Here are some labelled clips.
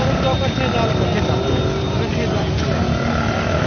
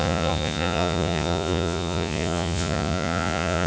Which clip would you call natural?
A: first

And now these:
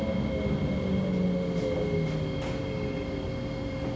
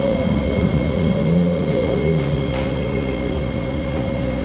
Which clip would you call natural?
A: first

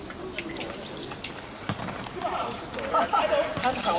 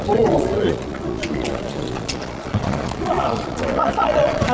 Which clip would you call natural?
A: first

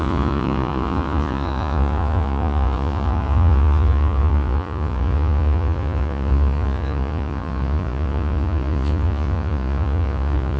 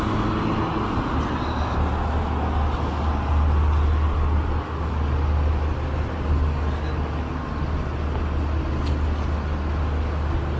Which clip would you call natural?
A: second